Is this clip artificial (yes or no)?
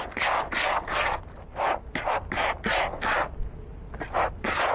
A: no